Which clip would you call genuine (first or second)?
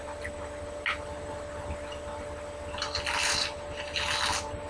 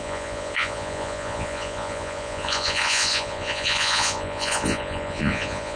first